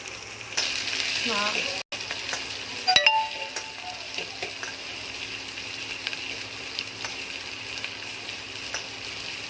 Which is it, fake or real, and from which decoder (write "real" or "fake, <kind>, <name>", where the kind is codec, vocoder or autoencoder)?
real